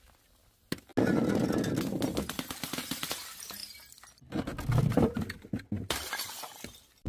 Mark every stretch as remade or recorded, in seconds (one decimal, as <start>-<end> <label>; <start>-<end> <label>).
0.0-7.1 recorded